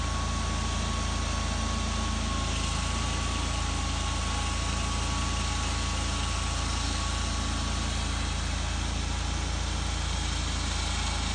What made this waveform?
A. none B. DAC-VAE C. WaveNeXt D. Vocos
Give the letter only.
A